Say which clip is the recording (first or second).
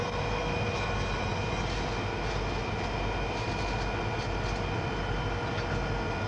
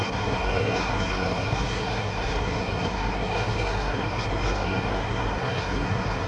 first